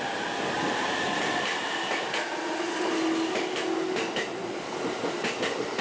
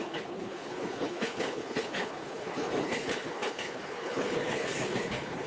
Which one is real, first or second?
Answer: first